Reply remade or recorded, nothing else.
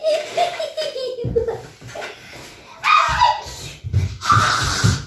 recorded